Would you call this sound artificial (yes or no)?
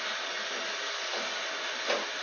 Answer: no